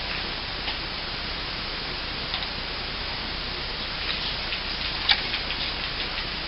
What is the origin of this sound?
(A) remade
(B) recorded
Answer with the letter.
B